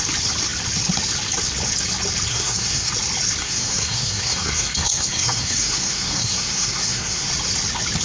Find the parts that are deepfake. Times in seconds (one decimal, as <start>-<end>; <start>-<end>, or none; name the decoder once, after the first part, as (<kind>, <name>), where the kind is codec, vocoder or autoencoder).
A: 2.3-2.9 (codec, SNAC); 3.4-7.3